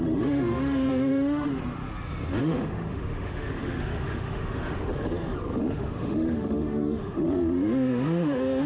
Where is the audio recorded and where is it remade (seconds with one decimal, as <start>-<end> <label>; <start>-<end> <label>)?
0.0-1.5 remade; 1.5-2.4 recorded; 2.4-4.9 remade; 4.9-5.6 recorded; 5.6-8.7 remade

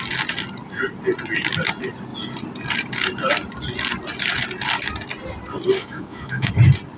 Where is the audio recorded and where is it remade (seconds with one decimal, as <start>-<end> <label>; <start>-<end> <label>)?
0.0-5.8 recorded; 5.8-6.5 remade; 6.5-7.0 recorded

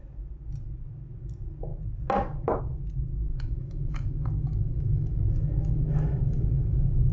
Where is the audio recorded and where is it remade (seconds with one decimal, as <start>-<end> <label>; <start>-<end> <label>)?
0.0-3.3 recorded; 3.3-7.1 remade

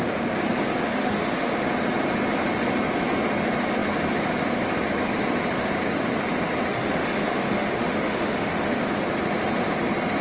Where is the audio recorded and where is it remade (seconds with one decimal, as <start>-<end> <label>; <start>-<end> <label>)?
0.0-0.9 recorded; 0.9-1.5 remade; 1.5-6.7 recorded; 6.7-8.9 remade; 8.9-10.2 recorded